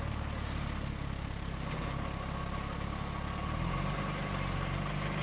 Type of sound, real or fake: real